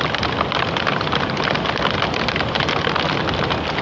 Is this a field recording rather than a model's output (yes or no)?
yes